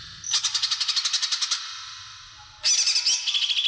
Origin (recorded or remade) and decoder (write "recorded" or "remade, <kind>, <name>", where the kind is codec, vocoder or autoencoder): recorded